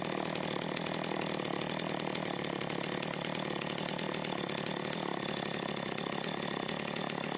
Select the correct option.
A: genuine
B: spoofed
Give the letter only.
A